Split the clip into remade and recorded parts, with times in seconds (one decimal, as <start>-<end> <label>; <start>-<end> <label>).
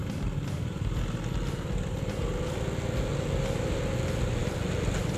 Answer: 0.0-5.2 recorded